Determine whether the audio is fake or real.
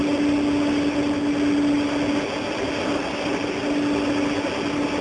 real